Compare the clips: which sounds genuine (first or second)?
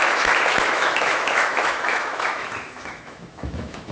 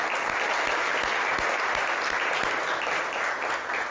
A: second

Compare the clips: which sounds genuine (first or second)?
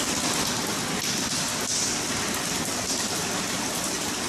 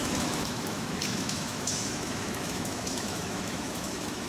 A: first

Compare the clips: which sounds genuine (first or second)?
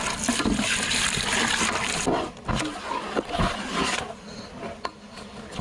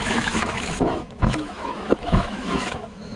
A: first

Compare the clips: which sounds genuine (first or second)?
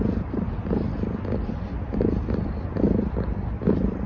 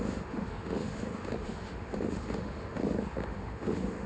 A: first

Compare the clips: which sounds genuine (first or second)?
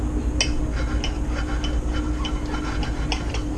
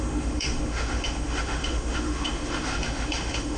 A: first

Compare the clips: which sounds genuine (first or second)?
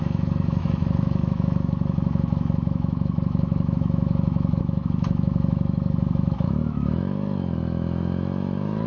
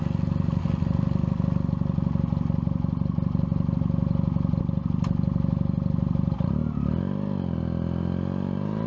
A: second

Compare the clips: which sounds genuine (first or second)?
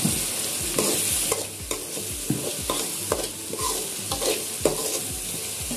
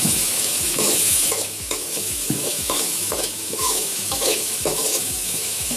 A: first